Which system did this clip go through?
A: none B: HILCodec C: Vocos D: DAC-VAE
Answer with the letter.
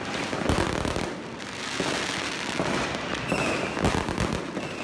A